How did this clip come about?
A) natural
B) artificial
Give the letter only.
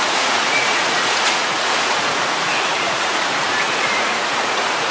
B